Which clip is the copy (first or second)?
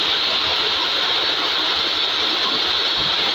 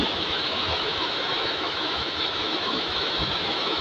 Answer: second